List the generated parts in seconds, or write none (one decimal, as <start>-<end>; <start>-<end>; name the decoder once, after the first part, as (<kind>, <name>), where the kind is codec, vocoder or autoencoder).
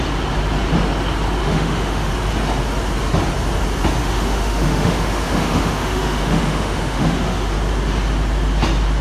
1.4-2.1 (autoencoder, DAC-VAE); 4.0-7.5